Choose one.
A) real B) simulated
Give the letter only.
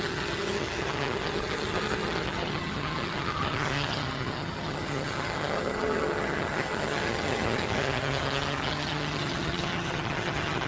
B